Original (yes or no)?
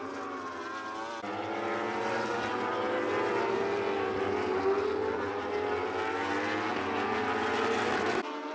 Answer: yes